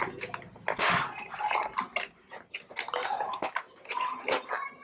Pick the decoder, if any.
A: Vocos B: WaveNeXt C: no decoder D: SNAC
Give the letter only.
C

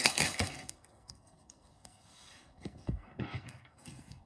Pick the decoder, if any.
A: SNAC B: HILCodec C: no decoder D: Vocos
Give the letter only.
A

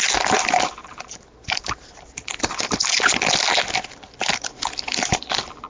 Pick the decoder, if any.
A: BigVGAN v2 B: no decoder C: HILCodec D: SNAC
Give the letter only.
B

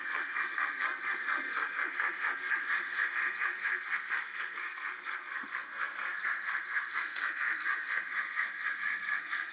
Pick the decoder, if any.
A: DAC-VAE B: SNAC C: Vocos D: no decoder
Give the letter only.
B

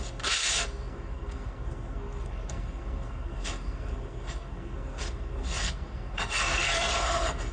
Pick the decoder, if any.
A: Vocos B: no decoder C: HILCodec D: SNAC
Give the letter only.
D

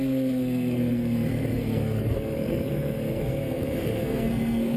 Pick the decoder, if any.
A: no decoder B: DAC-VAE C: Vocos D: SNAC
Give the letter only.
D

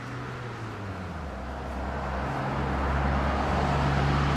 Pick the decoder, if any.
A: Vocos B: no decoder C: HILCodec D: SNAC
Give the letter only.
B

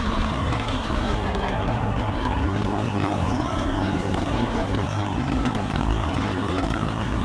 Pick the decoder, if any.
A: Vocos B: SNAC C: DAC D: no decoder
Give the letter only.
B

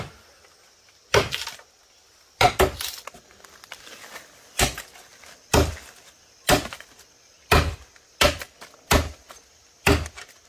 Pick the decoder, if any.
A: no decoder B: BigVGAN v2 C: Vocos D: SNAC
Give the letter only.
A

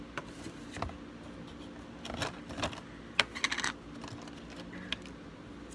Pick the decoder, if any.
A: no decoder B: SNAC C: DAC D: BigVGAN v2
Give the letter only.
A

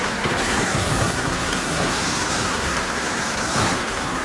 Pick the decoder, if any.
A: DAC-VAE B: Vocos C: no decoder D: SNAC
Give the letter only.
D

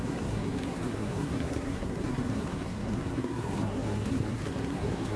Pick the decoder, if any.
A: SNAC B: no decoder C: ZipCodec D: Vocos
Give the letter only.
A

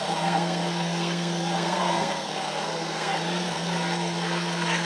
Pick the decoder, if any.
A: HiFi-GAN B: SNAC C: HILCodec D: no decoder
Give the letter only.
B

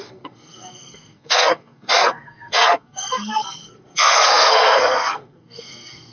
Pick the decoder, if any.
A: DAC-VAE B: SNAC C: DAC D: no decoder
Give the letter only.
B